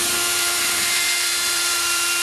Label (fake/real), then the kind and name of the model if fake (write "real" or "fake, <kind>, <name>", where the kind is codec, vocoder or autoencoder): fake, vocoder, BigVGAN v2